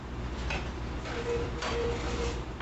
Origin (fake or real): fake